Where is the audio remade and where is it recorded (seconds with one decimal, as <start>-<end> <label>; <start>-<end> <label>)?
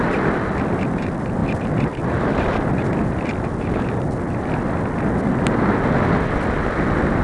0.0-7.2 recorded